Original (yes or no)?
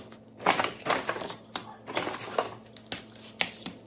yes